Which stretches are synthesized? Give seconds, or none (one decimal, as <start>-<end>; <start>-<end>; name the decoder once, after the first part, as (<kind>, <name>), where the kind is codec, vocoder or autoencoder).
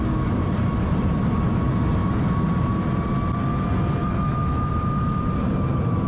4.0-4.7 (autoencoder, DAC-VAE)